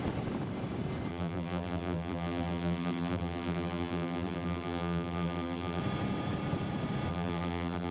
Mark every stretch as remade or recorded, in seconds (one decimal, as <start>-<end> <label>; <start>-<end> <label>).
0.0-1.1 recorded; 1.1-5.8 remade; 5.8-7.1 recorded; 7.1-7.9 remade